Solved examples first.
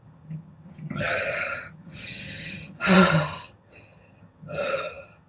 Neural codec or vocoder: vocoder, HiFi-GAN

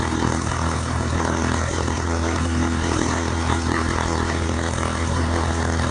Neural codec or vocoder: codec, SNAC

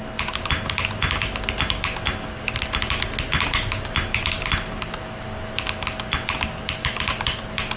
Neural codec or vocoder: none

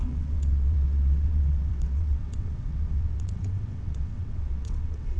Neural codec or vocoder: vocoder, WaveNeXt